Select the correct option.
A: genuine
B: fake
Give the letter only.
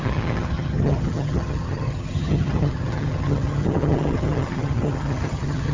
B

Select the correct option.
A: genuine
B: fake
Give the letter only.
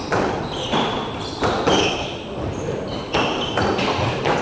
A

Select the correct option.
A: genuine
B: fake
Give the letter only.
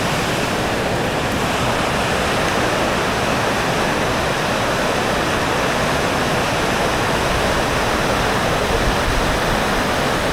A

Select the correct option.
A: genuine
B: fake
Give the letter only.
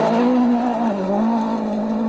A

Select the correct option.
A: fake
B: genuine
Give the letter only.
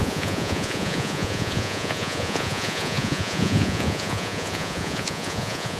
A